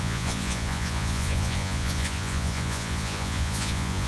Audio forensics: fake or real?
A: fake